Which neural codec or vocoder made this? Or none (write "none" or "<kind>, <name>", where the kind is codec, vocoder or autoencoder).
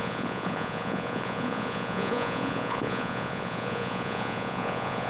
vocoder, Vocos